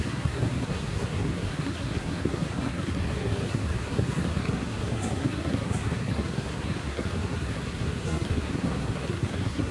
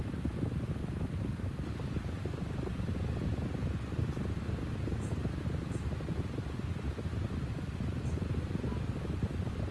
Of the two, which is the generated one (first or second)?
first